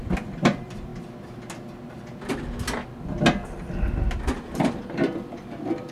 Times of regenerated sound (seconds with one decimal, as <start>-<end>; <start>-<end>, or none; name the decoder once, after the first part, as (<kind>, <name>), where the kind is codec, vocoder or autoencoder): 0.0-0.9 (vocoder, BigVGAN v2); 4.4-5.9